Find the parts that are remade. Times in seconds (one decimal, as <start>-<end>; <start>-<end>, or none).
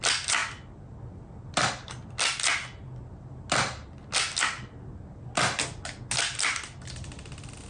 none